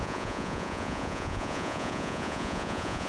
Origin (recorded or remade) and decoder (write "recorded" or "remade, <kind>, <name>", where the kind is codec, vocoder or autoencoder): remade, vocoder, Vocos